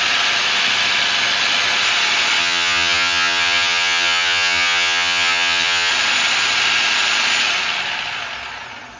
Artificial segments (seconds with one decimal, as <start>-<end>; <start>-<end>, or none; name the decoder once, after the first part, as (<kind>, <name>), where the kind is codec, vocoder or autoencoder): 2.4-5.9 (vocoder, HiFi-GAN)